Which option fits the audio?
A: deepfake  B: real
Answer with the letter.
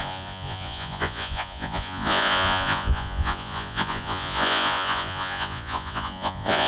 A